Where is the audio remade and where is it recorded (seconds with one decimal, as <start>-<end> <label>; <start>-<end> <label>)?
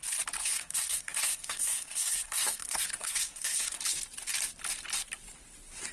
0.0-0.4 recorded; 0.4-3.8 remade; 3.8-5.9 recorded